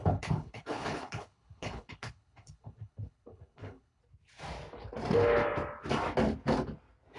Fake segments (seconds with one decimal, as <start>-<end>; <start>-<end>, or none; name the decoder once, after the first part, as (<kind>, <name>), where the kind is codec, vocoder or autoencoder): 0.0-4.0 (codec, HILCodec)